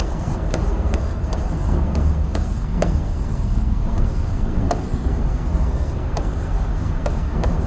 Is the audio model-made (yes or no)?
yes